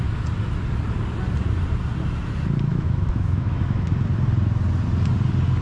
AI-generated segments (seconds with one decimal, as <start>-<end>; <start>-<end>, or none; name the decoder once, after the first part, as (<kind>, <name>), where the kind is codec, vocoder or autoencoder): 2.7-3.9 (autoencoder, DAC-VAE)